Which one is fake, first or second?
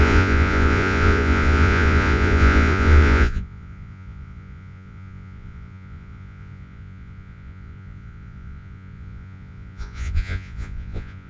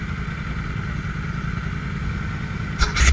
first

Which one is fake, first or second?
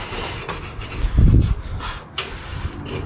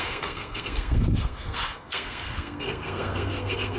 second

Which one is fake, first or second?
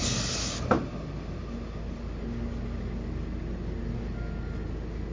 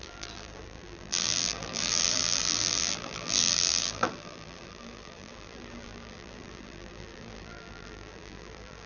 second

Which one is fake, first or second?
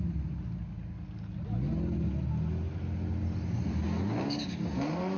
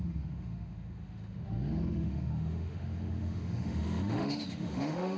second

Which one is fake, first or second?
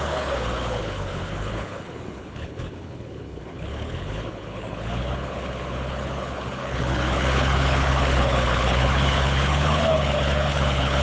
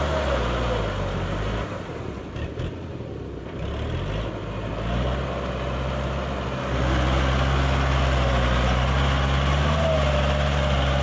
first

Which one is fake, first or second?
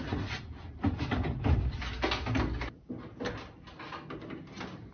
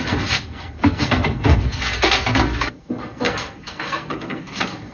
second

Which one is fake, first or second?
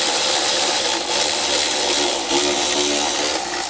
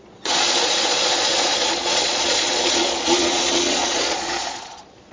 second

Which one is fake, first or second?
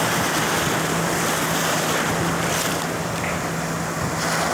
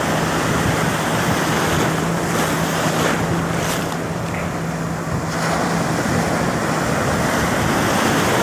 first